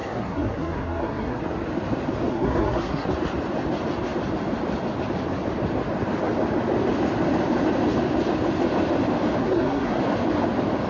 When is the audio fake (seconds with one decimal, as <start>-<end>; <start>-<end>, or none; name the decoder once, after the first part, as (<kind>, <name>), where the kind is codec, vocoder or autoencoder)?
0.0-1.4 (codec, SNAC); 2.3-3.1; 9.4-10.0